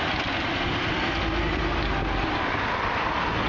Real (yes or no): yes